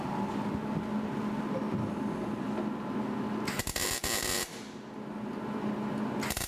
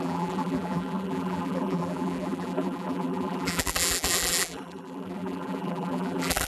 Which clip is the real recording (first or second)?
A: first